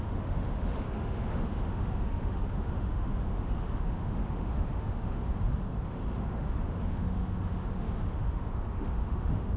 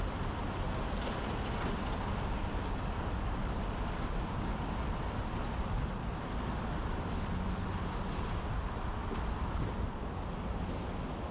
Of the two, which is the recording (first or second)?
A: second